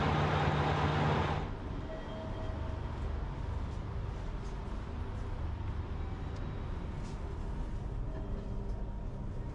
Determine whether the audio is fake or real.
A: real